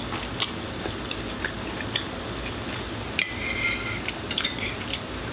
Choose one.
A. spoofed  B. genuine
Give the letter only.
B